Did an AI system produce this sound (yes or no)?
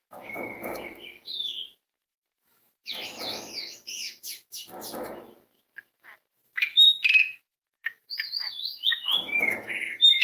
yes